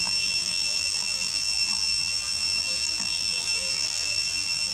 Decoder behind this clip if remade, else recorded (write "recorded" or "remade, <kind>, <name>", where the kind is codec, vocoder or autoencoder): remade, vocoder, BigVGAN v2